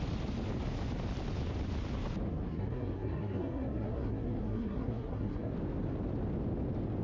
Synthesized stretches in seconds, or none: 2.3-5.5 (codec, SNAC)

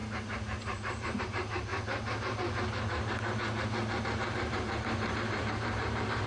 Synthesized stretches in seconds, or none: 0.0-1.7 (vocoder, BigVGAN v2); 4.0-6.3

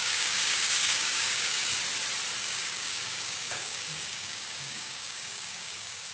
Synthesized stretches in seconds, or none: 0.0-1.8 (codec, DAC); 2.4-6.1

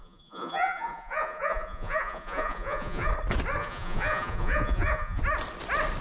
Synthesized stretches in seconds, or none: 0.0-3.1 (vocoder, Vocos); 3.6-5.2

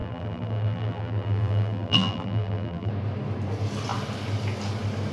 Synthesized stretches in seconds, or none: 0.0-2.9 (vocoder, BigVGAN v2)

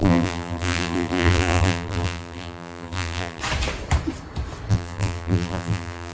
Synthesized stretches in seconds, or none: 0.0-3.4 (vocoder, BigVGAN v2); 4.7-6.1

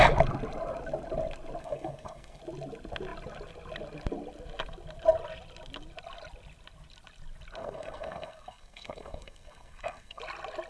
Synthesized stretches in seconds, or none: 1.6-2.4 (codec, SNAC); 7.6-10.2